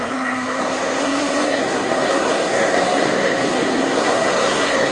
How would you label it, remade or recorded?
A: remade